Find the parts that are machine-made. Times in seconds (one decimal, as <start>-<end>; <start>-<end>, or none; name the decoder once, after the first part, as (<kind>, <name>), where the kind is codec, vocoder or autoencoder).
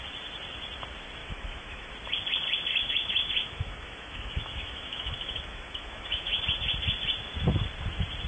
1.2-1.9 (autoencoder, DAC-VAE); 2.7-6.4